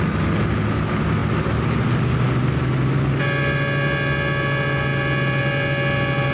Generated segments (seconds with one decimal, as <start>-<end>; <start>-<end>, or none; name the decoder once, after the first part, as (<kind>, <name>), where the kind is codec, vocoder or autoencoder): none